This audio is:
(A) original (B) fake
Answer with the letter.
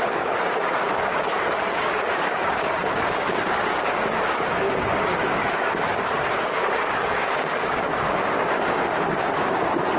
B